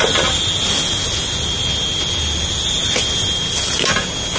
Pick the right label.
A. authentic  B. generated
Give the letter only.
A